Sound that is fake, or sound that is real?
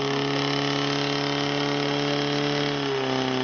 real